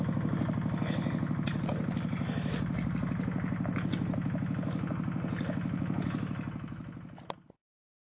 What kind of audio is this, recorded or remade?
recorded